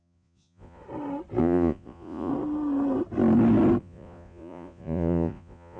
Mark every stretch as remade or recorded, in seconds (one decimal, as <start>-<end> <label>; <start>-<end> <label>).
0.0-0.8 remade; 0.8-1.4 recorded; 1.4-2.3 remade; 2.3-3.8 recorded; 3.8-5.8 remade